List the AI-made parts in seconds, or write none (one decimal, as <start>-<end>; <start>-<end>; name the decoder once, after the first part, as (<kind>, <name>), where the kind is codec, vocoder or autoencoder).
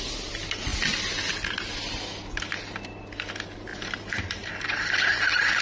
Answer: 3.7-4.5 (vocoder, BigVGAN v2)